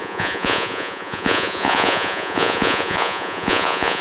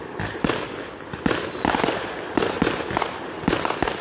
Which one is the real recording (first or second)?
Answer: second